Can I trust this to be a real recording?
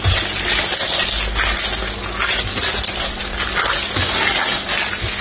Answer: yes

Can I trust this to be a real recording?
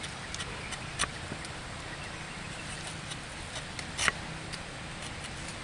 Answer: yes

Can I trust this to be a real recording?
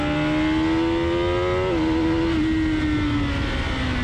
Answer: yes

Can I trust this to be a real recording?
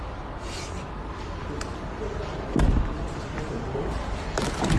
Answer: yes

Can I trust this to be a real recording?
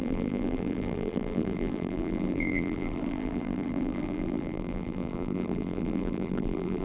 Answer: no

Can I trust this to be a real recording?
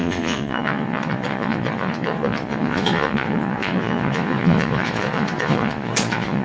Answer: no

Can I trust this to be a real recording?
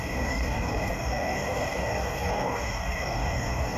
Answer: no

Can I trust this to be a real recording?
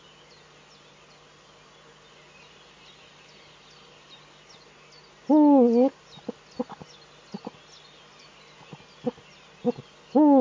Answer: yes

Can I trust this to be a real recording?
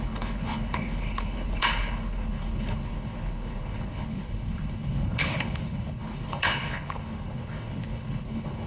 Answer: no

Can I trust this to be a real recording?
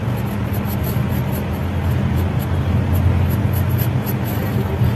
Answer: yes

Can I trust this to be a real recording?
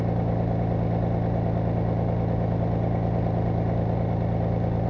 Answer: yes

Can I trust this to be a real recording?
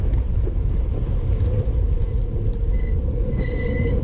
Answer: no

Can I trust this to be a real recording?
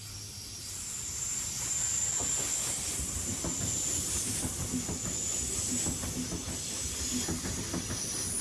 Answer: yes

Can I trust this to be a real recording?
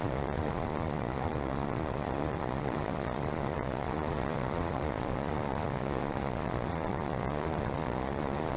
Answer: no